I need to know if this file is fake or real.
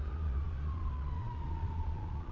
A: fake